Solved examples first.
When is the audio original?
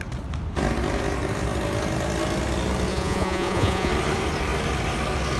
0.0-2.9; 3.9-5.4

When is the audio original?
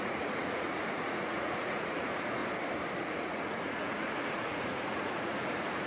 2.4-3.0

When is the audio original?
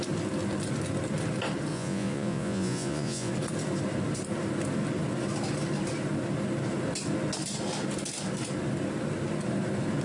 0.0-1.7; 3.3-10.0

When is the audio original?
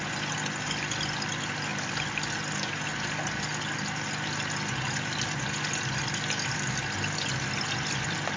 0.0-8.4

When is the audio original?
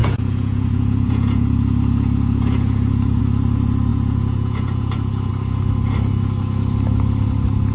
3.2-3.9; 5.3-7.7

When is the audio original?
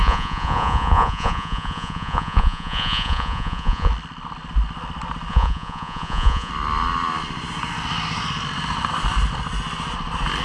3.9-5.3; 6.5-10.4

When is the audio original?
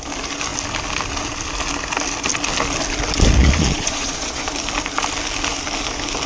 0.0-3.4; 4.5-6.3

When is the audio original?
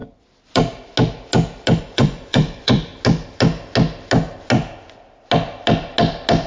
0.0-1.8; 2.9-6.5